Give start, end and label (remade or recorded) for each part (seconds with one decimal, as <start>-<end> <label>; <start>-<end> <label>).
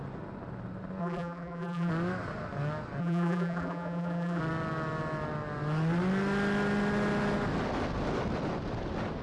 0.0-1.0 recorded; 1.0-1.9 remade; 1.9-3.0 recorded; 3.0-4.4 remade; 4.4-9.2 recorded